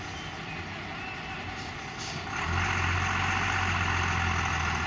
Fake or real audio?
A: real